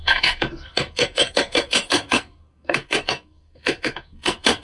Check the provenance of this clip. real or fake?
fake